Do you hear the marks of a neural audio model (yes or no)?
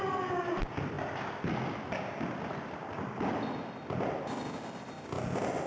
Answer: no